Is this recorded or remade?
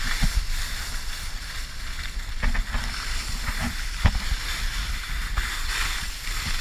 recorded